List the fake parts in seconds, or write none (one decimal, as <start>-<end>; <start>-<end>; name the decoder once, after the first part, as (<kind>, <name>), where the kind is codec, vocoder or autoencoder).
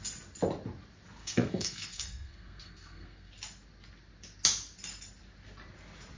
1.2-3.3 (codec, SNAC)